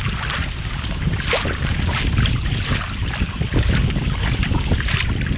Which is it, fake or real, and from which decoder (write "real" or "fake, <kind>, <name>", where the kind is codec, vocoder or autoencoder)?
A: real